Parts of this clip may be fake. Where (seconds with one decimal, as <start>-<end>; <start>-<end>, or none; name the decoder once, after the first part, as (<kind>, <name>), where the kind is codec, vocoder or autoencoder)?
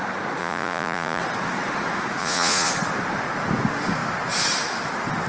0.4-1.2 (vocoder, Vocos); 2.2-2.7